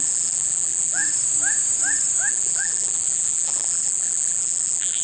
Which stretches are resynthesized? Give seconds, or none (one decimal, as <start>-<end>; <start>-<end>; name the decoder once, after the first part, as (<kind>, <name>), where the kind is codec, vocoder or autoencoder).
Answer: 0.0-1.0 (vocoder, BigVGAN v2); 2.3-5.0

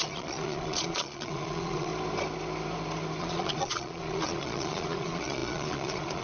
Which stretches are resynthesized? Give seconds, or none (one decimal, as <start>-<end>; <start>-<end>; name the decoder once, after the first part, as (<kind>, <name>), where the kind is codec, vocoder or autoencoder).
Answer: 0.0-1.9 (vocoder, Vocos); 3.2-6.2

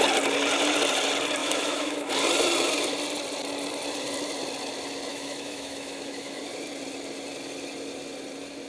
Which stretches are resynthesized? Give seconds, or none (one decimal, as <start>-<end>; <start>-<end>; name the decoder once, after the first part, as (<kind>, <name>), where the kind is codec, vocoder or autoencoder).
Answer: 1.4-2.1 (autoencoder, DAC-VAE); 5.1-6.4

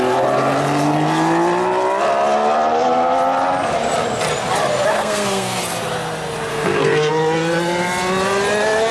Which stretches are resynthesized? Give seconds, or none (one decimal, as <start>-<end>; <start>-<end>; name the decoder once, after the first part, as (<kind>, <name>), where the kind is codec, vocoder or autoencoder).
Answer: 4.9-5.6 (codec, SNAC); 6.5-7.1

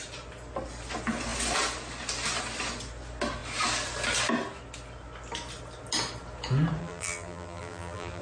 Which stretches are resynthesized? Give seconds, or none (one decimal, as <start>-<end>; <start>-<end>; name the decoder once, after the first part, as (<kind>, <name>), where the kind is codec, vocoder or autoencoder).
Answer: 6.8-8.2 (vocoder, BigVGAN v2)

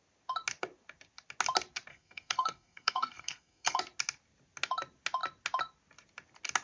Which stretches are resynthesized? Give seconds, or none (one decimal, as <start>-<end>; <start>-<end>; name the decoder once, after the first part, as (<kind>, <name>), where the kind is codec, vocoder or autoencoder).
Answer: 1.9-3.8 (codec, SNAC)